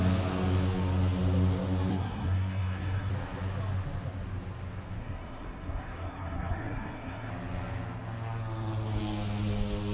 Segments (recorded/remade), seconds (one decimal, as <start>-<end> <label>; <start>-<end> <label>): 0.0-1.9 recorded; 1.9-3.1 remade; 3.1-5.0 recorded; 5.0-7.3 remade; 7.3-9.9 recorded